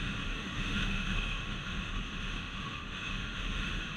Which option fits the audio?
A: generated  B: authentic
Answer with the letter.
A